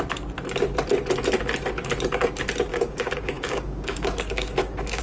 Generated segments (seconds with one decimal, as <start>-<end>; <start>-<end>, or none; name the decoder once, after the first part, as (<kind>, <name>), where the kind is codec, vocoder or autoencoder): 2.7-5.0 (codec, DAC)